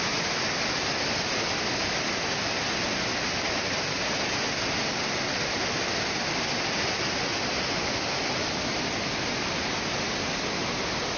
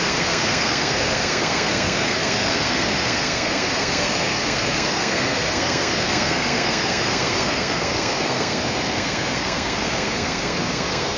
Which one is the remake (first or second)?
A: second